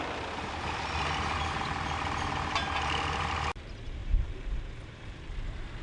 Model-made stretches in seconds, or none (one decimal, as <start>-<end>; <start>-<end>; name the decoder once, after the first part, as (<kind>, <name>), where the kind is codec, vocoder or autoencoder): 4.0-4.6 (vocoder, BigVGAN v2)